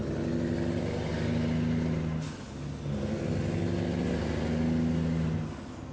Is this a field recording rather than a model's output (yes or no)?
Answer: yes